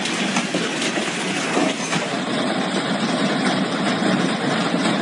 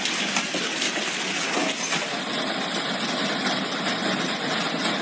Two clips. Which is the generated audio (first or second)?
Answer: first